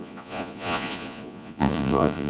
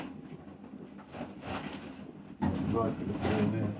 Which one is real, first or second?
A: second